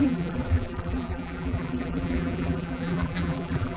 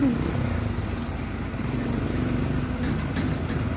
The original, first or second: second